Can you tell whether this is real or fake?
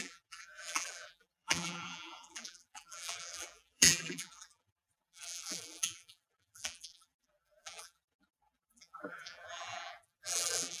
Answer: fake